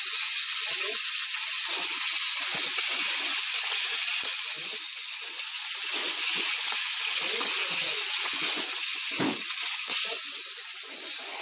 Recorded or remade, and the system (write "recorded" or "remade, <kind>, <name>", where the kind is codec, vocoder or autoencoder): remade, vocoder, Vocos